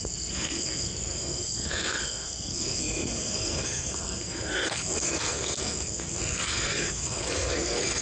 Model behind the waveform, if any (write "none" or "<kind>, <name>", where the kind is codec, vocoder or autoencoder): codec, SNAC